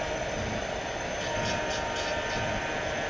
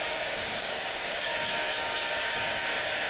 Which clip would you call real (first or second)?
first